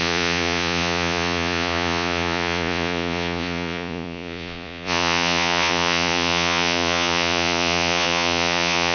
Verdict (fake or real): fake